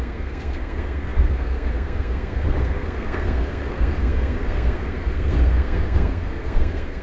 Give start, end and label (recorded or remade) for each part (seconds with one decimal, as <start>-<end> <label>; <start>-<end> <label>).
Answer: 0.0-7.0 remade